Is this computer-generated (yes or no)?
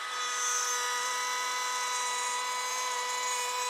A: yes